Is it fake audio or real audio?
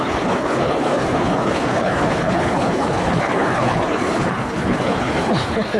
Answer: fake